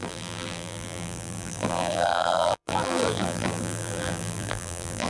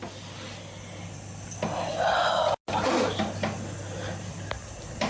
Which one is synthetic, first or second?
first